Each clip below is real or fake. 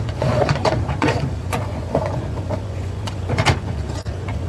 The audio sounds fake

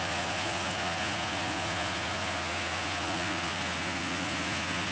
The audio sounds fake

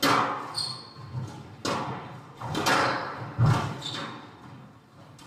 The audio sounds real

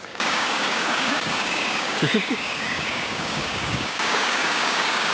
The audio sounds fake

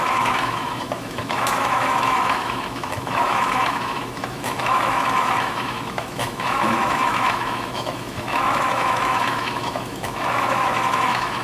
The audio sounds fake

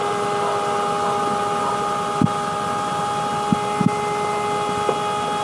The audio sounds real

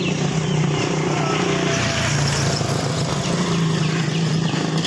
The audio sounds real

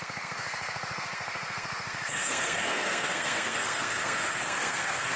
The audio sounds fake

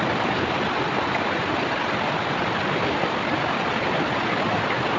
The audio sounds fake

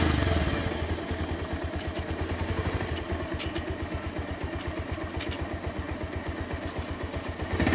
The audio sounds real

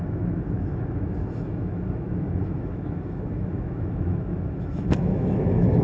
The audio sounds fake